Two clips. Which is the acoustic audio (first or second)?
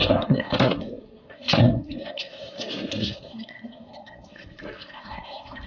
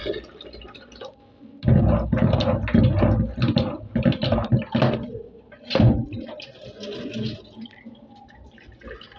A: second